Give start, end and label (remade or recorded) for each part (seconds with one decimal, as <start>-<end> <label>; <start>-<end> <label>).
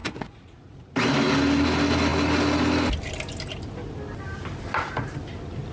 0.0-0.8 remade; 0.8-5.7 recorded